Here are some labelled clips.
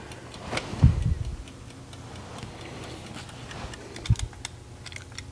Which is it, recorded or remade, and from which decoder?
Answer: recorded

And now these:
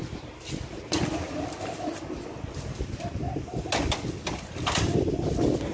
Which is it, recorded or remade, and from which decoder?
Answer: recorded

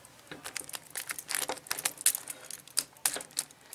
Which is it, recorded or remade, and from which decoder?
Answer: recorded